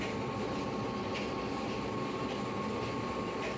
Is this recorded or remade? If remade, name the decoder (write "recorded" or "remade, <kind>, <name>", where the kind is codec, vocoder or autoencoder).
recorded